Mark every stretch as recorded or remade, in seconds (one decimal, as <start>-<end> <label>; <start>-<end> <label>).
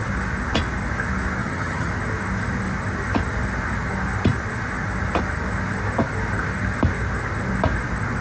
0.0-1.4 recorded; 1.4-1.9 remade; 1.9-8.2 recorded